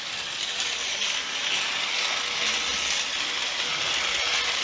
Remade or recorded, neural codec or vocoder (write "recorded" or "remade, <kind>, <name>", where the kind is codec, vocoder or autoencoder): recorded